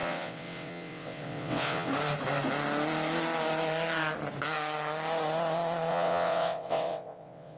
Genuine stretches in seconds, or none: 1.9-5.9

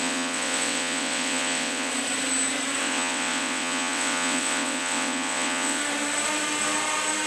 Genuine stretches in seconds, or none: 1.9-2.8; 5.8-7.3

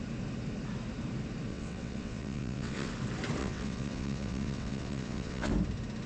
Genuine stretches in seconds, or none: 0.0-1.5; 2.9-3.4; 5.5-6.1

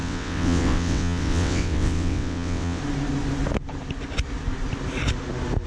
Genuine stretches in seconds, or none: 2.8-5.7